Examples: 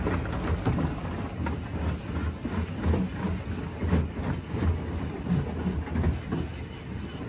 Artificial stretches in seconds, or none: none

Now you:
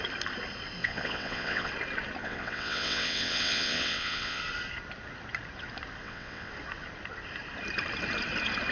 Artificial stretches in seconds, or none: 0.8-1.7; 2.2-4.4; 6.0-6.5

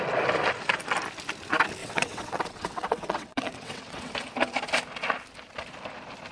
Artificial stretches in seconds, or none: 1.8-4.1